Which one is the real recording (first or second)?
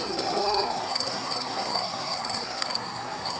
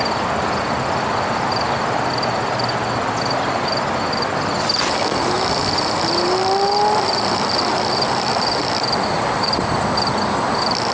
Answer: second